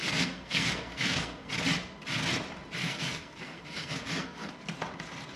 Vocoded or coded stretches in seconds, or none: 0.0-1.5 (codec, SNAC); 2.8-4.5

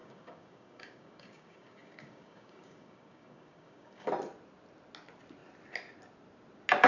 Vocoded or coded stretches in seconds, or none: 0.0-4.1 (codec, DAC)

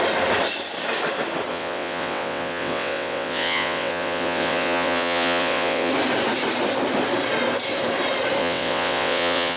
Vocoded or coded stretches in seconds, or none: 1.5-5.9 (vocoder, WaveNeXt); 8.4-9.6

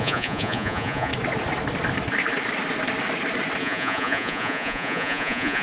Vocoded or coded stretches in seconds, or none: 0.0-1.1 (vocoder, Vocos); 3.6-5.6

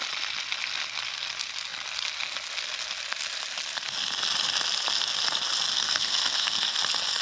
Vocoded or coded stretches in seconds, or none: 5.7-6.8 (codec, SNAC)

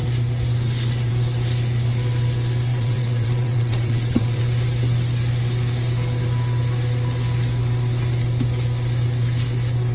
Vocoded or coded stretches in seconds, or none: 2.7-4.4 (vocoder, WaveNeXt)

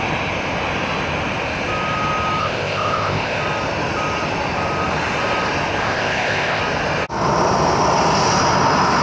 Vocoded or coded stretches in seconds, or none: 2.4-3.4 (codec, ZipCodec); 5.8-6.6

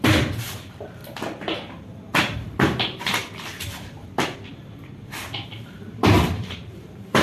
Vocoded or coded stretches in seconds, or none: 0.0-1.0 (vocoder, BigVGAN v2); 2.2-3.2; 5.6-7.2